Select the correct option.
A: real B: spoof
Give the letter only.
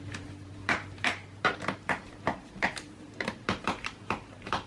B